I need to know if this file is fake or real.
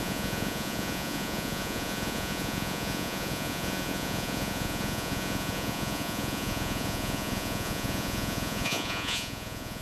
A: fake